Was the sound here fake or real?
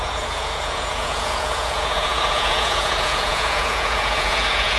fake